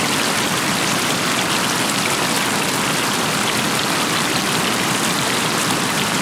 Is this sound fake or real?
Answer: real